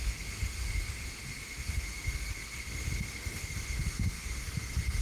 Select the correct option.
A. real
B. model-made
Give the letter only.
B